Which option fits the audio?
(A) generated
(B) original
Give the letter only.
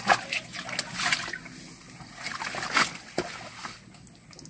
B